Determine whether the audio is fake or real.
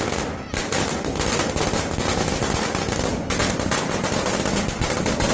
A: real